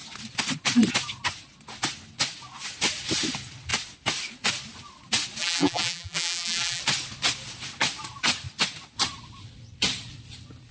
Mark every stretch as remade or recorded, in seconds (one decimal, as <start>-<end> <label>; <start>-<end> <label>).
0.0-5.4 recorded; 5.4-6.8 remade; 6.8-10.7 recorded